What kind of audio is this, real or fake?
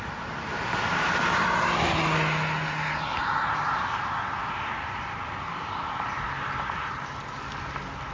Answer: real